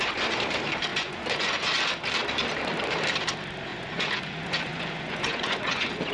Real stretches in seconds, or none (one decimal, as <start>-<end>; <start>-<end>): 0.0-0.9; 1.8-3.7